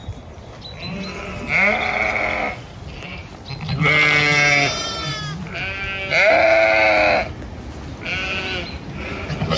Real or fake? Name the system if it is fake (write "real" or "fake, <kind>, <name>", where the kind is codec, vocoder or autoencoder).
real